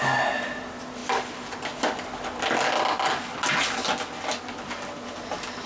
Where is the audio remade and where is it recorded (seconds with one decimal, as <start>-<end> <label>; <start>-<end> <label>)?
0.0-5.7 recorded